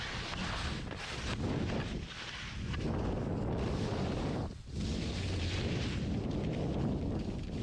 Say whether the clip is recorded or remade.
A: recorded